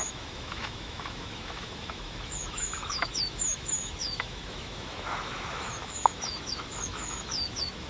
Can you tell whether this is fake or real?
fake